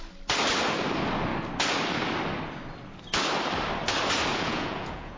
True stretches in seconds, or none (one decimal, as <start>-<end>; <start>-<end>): 0.0-4.3